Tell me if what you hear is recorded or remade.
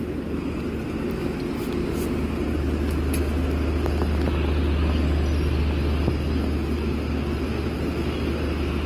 recorded